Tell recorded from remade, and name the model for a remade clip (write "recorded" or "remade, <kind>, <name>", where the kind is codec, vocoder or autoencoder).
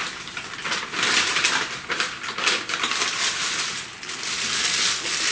recorded